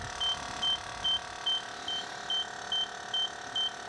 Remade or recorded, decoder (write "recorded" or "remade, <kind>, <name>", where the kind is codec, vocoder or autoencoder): recorded